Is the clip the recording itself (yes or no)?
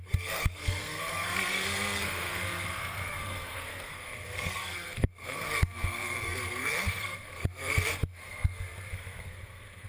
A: no